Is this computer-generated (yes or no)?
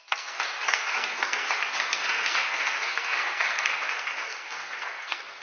yes